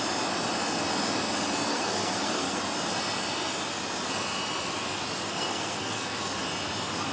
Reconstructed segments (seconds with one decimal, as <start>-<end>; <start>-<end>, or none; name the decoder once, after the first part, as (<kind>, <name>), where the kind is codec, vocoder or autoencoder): 1.7-2.6 (codec, SNAC); 5.3-6.2